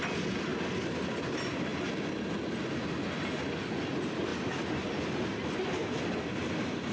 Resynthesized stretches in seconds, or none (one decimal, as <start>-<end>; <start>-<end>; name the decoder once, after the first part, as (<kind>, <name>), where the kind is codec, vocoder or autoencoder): none